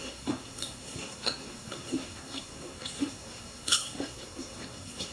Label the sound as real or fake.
fake